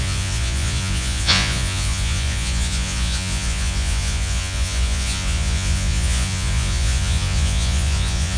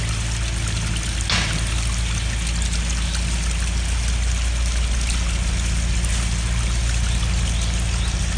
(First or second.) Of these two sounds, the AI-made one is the first